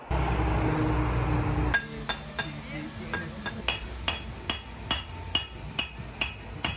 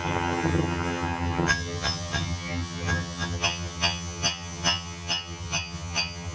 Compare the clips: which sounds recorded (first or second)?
first